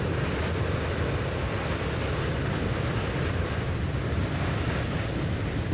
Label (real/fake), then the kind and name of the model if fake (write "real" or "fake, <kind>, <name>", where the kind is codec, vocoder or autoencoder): real